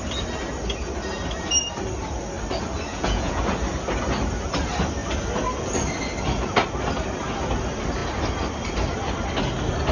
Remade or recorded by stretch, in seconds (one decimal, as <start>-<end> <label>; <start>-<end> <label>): 0.0-2.9 recorded; 2.9-3.4 remade; 3.4-9.9 recorded